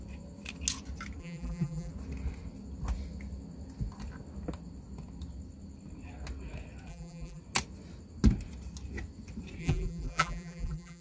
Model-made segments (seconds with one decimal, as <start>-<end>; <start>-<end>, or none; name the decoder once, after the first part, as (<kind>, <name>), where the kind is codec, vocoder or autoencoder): 1.2-1.9 (vocoder, BigVGAN v2); 6.9-7.4; 9.6-11.0